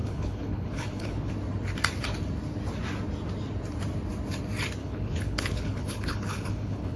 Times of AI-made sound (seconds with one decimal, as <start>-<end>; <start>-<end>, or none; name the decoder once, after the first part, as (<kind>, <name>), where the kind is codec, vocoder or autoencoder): 0.0-1.3 (codec, HILCodec); 4.8-7.0